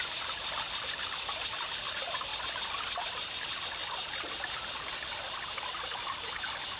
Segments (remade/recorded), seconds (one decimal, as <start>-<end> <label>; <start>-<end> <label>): 0.0-6.8 recorded